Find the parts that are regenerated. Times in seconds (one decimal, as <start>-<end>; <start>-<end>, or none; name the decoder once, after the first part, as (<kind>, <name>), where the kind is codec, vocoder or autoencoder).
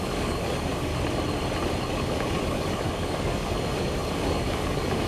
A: 0.0-0.9 (codec, DAC); 1.9-5.1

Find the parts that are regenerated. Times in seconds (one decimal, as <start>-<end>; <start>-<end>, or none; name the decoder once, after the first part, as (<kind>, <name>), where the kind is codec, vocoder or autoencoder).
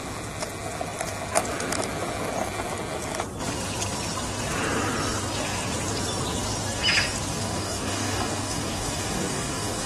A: 7.3-9.9 (codec, DAC)